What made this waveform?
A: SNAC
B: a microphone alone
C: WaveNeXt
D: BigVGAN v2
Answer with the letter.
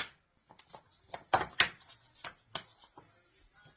B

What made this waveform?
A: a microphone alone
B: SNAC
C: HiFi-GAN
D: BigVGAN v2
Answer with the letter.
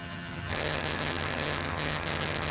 C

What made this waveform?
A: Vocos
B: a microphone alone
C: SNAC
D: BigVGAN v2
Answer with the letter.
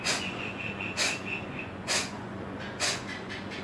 A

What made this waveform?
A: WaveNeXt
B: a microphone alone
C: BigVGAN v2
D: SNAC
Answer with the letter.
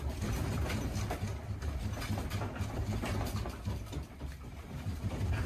B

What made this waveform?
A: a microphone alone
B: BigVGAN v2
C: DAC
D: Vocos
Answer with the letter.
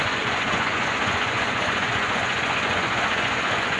D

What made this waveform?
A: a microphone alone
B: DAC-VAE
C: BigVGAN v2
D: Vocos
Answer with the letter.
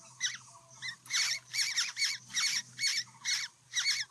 A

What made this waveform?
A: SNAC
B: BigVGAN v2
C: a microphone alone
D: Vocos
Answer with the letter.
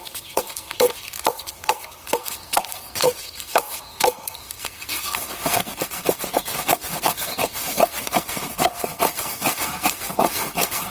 A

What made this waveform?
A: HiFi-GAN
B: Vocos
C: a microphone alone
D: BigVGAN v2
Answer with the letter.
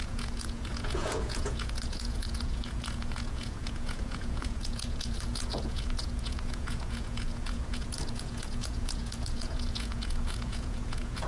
B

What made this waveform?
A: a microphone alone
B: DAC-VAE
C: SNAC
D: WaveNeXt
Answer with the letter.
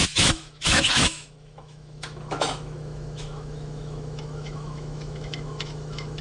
B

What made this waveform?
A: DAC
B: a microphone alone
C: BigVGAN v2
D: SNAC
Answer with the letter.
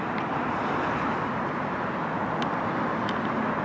B